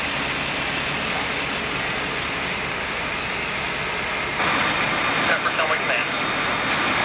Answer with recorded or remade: recorded